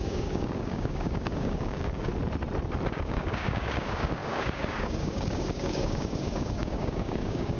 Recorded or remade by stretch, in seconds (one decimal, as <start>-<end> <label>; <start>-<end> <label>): 0.0-2.1 remade; 2.1-2.9 recorded; 2.9-7.6 remade

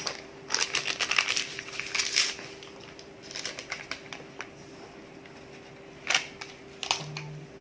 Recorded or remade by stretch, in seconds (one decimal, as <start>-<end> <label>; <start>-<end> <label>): 0.0-7.6 recorded

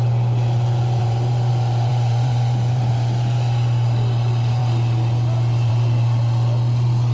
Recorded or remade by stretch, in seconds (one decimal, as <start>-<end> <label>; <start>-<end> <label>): 0.0-1.0 recorded; 1.0-1.5 remade; 1.5-1.9 recorded; 1.9-2.9 remade; 2.9-7.1 recorded